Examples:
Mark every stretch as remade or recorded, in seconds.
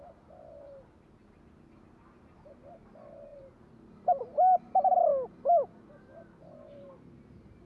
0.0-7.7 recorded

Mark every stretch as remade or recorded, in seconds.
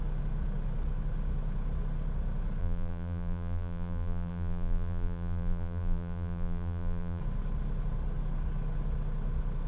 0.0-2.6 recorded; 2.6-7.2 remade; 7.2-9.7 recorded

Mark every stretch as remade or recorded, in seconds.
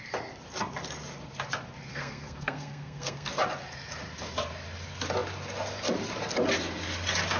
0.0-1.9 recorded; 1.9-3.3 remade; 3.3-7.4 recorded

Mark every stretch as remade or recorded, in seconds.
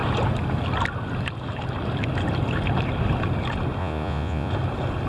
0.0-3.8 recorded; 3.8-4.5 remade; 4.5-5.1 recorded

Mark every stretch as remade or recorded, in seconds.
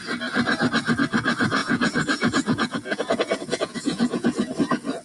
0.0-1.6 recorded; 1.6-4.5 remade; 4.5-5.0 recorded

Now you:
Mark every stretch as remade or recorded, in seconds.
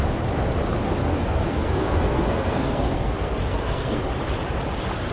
0.0-1.0 recorded; 1.0-4.0 remade; 4.0-5.1 recorded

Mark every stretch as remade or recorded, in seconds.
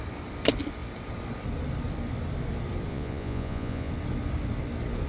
0.0-2.9 recorded; 2.9-3.9 remade; 3.9-5.1 recorded